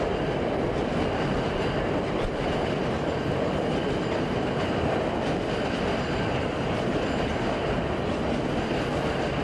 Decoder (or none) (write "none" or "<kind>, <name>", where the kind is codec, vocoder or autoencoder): none